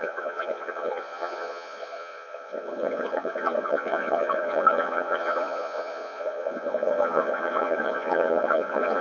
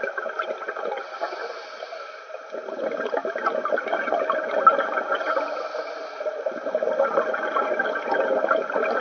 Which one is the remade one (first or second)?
first